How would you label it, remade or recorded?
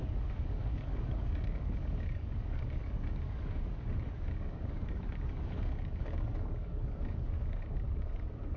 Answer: remade